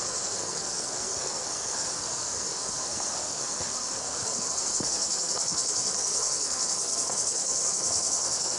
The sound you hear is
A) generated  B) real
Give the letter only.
A